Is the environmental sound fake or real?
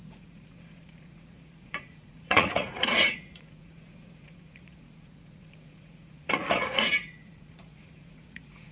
fake